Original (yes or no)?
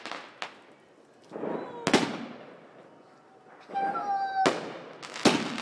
yes